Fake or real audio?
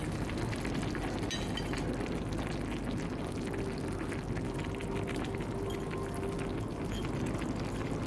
real